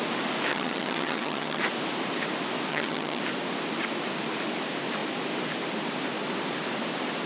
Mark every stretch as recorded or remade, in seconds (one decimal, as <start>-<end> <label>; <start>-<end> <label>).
0.0-0.5 recorded; 0.5-1.6 remade; 1.6-2.7 recorded; 2.7-3.2 remade; 3.2-7.3 recorded